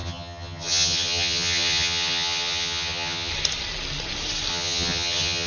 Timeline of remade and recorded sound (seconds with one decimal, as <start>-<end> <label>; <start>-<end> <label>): 0.0-3.3 remade; 3.3-4.5 recorded; 4.5-5.5 remade